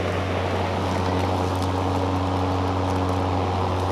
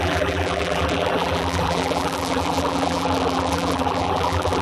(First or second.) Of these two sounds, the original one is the first